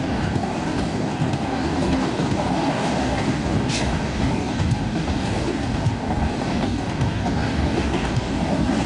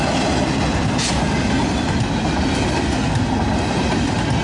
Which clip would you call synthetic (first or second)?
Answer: first